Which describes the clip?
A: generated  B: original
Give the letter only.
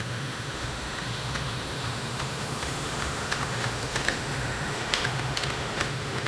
A